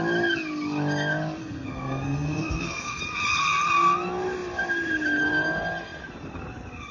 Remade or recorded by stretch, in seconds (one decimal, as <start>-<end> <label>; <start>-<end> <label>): 0.0-1.4 recorded; 1.4-3.0 remade; 3.0-6.9 recorded